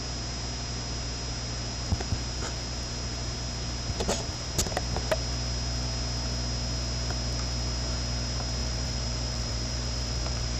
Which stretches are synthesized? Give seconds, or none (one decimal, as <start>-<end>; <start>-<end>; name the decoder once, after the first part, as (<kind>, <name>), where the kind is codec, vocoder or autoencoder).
8.6-10.6 (vocoder, BigVGAN v2)